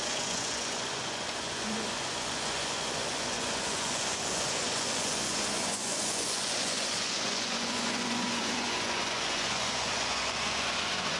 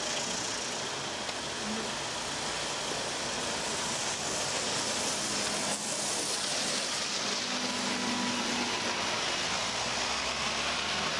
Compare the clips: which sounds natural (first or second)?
second